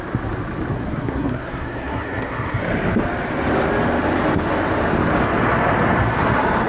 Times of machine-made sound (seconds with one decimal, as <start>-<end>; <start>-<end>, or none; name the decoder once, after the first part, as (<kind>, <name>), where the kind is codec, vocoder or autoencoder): 0.7-2.6 (codec, SNAC)